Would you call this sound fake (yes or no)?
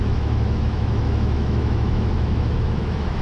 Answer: yes